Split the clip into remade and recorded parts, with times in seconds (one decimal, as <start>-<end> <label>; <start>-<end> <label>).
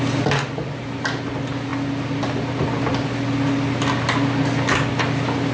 0.0-5.5 recorded